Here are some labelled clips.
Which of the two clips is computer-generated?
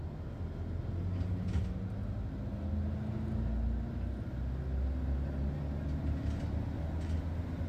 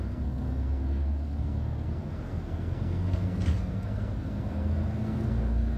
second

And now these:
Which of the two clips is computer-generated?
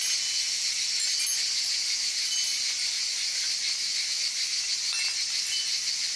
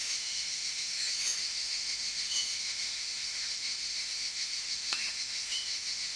second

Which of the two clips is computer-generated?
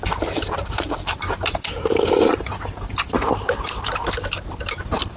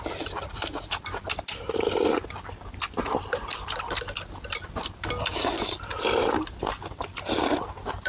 first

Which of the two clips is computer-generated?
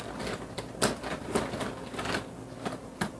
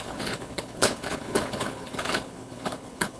second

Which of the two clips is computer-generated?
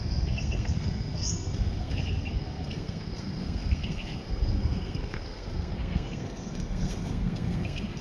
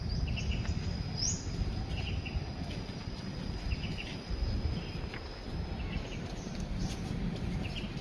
first